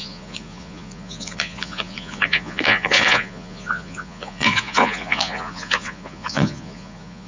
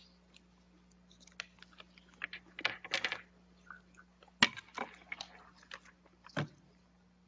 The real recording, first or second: second